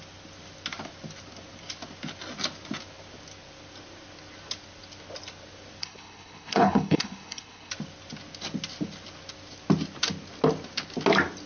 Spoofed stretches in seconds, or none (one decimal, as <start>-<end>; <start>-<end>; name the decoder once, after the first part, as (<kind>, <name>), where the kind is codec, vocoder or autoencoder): 5.8-7.7 (codec, HILCodec)